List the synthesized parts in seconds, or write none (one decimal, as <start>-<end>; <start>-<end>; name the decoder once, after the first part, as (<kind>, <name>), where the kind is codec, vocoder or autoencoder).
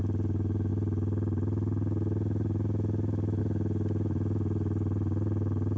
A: none